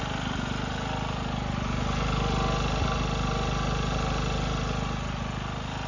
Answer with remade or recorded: recorded